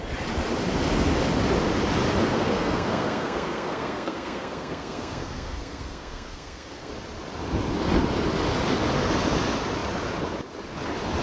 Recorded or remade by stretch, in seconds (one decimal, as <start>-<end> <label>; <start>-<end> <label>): 0.0-2.3 recorded; 2.3-6.9 remade; 6.9-11.2 recorded